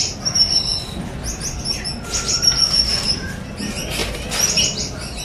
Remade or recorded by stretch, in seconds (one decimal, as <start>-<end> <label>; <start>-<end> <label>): 0.0-0.7 remade; 0.7-2.9 recorded; 2.9-4.0 remade; 4.0-5.2 recorded